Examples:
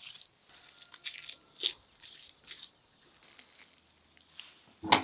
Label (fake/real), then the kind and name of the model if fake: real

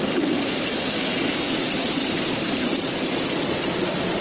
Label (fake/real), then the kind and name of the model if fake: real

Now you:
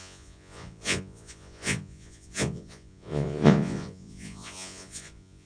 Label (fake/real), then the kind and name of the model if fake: fake, vocoder, Vocos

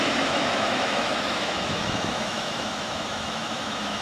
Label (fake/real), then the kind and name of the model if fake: fake, autoencoder, DAC-VAE